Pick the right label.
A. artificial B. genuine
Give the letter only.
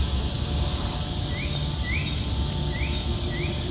B